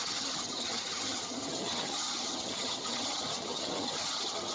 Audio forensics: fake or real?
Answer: fake